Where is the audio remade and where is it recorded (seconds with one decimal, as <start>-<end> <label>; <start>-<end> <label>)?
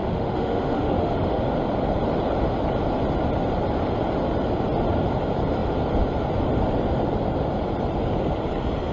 0.0-1.4 remade; 1.4-8.9 recorded